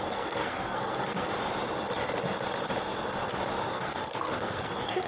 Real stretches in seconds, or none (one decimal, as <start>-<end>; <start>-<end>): 1.3-3.7